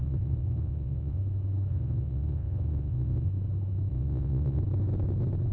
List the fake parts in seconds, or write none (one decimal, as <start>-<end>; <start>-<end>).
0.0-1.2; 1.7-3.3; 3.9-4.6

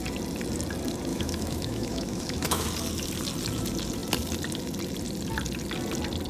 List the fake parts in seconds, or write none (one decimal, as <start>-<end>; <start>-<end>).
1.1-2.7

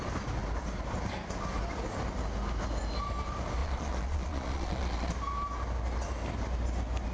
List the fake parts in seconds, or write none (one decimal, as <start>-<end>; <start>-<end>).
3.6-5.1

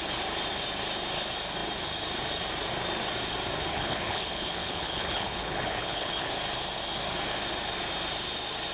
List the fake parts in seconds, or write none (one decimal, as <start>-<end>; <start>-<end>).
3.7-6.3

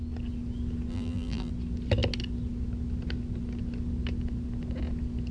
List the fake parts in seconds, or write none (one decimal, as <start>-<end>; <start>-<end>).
0.9-1.5